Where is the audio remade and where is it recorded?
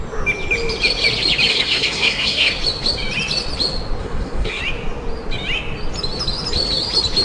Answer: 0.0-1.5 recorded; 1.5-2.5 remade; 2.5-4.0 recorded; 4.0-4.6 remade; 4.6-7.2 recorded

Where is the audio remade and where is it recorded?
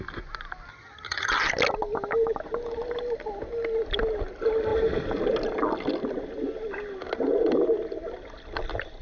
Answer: 0.0-0.7 recorded; 0.7-1.5 remade; 1.5-9.0 recorded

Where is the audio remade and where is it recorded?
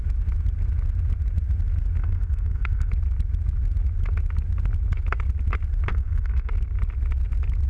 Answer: 0.0-2.0 recorded; 2.0-2.9 remade; 2.9-5.9 recorded; 5.9-6.5 remade; 6.5-7.7 recorded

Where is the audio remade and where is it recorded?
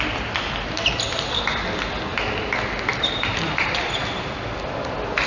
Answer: 0.0-2.9 recorded; 2.9-4.3 remade; 4.3-5.3 recorded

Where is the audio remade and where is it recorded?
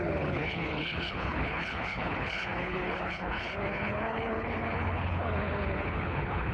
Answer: 0.0-6.5 remade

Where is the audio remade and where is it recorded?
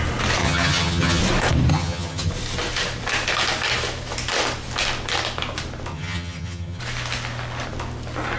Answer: 0.0-0.4 recorded; 0.4-1.2 remade; 1.2-1.7 recorded; 1.7-2.3 remade; 2.3-5.9 recorded; 5.9-6.8 remade; 6.8-8.4 recorded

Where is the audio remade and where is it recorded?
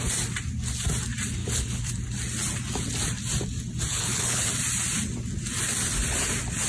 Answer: 0.0-1.4 recorded; 1.4-1.9 remade; 1.9-3.9 recorded; 3.9-4.5 remade; 4.5-6.7 recorded